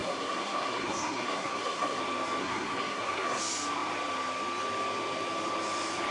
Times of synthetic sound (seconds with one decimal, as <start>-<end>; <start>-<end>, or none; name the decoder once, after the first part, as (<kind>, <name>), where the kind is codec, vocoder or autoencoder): 0.0-2.0 (codec, SNAC); 2.4-3.4

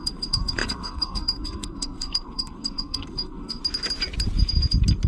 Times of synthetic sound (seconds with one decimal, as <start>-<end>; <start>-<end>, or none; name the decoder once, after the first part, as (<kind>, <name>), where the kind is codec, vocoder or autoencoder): 0.0-3.6 (codec, SNAC)